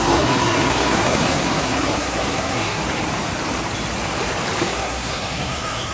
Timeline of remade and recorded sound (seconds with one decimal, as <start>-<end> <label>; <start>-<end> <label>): 0.0-2.8 remade; 2.8-4.6 recorded; 4.6-5.9 remade